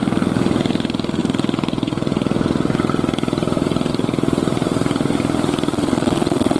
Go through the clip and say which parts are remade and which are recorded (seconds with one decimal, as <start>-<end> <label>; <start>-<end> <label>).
0.0-5.7 recorded; 5.7-6.6 remade